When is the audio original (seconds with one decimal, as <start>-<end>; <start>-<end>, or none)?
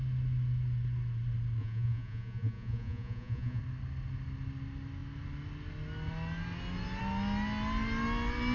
0.0-1.6; 3.6-8.5